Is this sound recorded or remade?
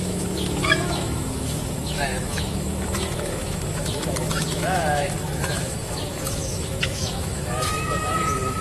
remade